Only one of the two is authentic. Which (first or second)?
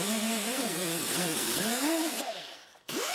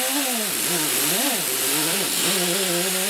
second